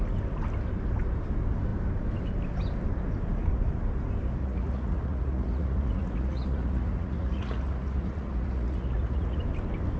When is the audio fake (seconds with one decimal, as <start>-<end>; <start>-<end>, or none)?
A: 4.4-9.4